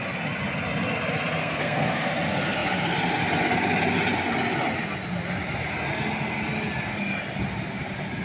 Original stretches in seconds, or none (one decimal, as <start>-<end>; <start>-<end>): 0.0-1.4; 2.1-8.2